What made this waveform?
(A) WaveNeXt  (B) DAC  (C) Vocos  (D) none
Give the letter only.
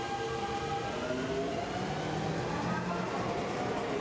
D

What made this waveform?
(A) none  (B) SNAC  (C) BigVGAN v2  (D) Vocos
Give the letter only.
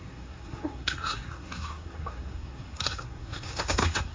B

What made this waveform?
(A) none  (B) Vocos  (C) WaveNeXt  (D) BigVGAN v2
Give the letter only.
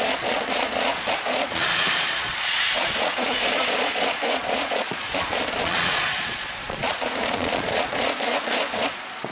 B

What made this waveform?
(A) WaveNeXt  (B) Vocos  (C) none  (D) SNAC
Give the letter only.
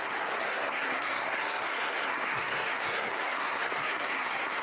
D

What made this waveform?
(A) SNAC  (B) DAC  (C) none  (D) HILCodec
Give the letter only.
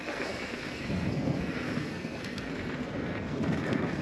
A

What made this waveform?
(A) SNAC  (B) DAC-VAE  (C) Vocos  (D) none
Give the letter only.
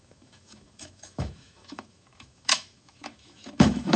B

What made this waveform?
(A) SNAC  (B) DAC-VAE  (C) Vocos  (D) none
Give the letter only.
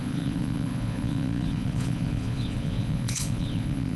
C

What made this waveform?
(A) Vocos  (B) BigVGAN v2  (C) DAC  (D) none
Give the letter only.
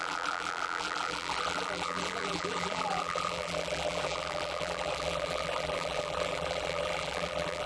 B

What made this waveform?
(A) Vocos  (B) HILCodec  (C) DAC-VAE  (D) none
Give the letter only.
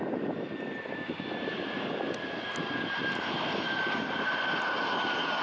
D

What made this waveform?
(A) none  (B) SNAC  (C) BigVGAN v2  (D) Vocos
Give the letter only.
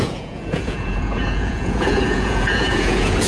D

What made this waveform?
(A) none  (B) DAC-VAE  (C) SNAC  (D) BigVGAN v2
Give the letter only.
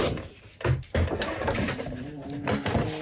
A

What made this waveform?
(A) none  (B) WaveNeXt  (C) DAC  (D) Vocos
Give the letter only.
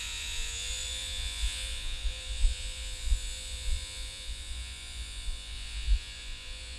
D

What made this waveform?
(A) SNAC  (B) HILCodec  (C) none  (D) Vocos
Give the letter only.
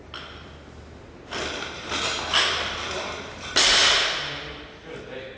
C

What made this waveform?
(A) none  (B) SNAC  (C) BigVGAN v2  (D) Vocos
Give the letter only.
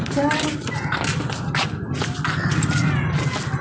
A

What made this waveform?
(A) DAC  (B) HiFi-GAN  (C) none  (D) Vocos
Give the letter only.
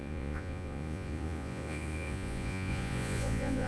D